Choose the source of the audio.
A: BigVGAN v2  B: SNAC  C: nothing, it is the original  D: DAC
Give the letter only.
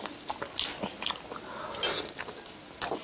C